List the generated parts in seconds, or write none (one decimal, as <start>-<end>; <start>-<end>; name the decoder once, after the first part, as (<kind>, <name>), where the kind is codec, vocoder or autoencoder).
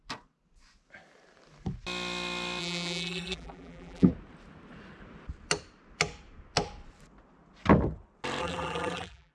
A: 2.6-4.1 (vocoder, BigVGAN v2); 8.4-9.3